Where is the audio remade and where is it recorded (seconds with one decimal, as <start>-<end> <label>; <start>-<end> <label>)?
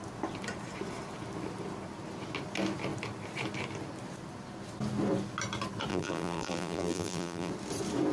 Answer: 0.0-5.9 recorded; 5.9-7.5 remade; 7.5-8.1 recorded